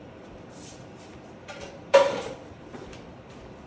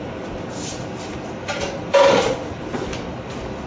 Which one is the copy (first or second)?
first